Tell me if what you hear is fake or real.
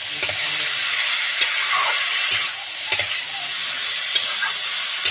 real